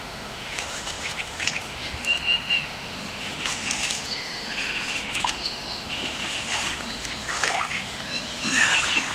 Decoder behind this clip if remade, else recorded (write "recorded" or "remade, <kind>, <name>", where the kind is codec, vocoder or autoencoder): remade, autoencoder, DAC-VAE